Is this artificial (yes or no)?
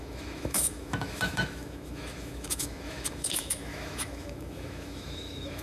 yes